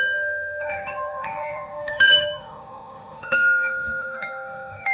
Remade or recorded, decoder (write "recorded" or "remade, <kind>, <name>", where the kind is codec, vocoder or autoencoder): remade, autoencoder, DAC-VAE